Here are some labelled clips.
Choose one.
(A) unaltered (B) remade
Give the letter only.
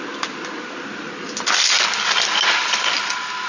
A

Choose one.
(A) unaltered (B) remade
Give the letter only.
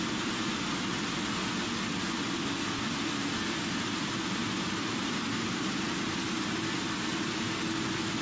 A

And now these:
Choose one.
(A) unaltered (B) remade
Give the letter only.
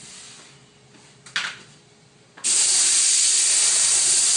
A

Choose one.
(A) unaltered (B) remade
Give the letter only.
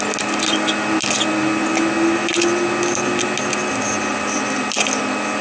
A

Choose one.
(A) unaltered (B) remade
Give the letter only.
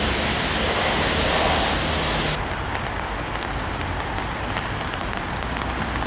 A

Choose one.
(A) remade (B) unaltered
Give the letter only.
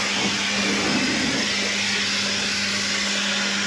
B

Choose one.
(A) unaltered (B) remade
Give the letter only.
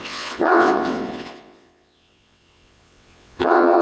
B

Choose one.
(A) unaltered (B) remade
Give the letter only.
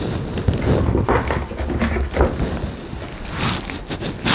A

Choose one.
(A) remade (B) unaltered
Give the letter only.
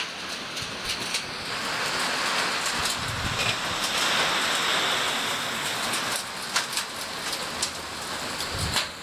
B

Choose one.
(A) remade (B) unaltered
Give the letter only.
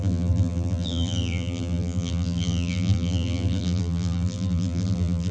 A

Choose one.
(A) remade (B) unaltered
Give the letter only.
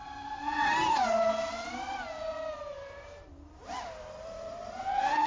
B